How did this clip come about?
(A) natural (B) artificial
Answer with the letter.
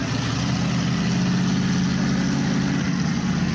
A